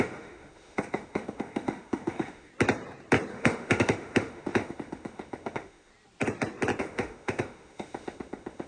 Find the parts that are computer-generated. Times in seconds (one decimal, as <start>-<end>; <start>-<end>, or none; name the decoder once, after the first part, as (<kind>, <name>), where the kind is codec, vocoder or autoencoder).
0.0-2.5 (autoencoder, DAC-VAE); 3.3-5.9; 6.8-8.7